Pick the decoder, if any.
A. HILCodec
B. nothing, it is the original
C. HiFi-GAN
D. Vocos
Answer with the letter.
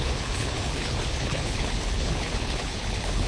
A